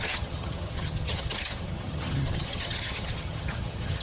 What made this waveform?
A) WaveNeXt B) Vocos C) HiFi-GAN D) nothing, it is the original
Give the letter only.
C